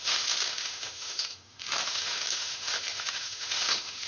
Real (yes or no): no